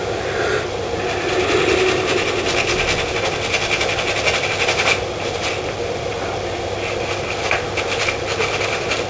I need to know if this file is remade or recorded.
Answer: recorded